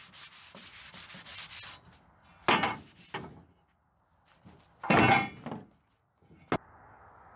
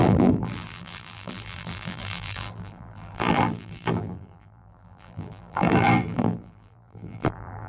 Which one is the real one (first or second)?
first